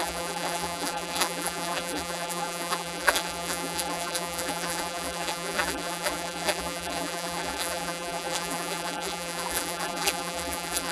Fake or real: fake